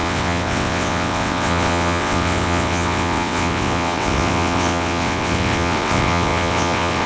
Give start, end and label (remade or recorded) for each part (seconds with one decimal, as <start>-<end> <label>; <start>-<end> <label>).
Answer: 0.0-7.1 remade